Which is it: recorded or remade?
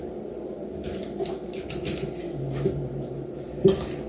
recorded